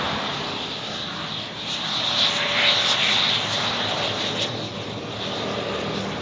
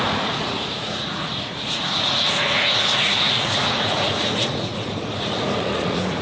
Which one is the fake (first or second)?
second